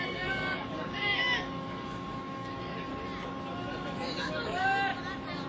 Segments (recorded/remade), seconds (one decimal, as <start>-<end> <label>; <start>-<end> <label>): 0.0-2.9 remade; 2.9-3.7 recorded; 3.7-4.9 remade; 4.9-5.5 recorded